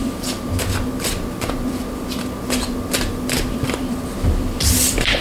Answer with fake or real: fake